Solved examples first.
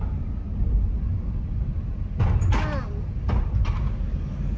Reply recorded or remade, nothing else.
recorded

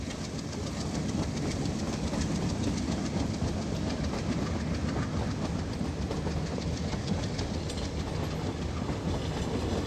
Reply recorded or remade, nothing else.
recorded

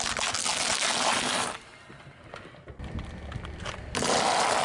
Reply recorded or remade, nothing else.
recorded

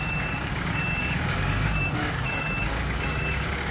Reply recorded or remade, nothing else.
remade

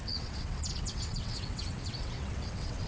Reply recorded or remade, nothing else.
remade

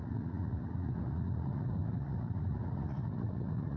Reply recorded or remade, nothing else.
remade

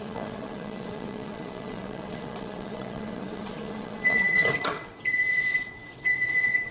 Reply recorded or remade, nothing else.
remade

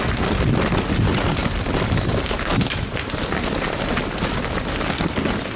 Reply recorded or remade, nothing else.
recorded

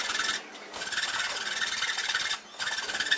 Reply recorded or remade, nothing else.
recorded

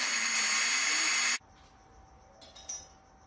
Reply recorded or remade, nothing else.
recorded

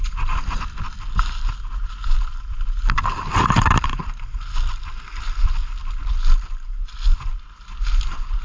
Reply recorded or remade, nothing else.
recorded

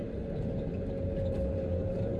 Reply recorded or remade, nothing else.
recorded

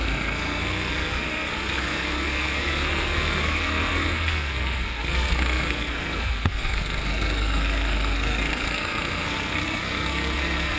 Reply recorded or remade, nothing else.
remade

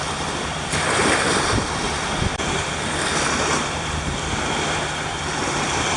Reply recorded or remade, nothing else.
remade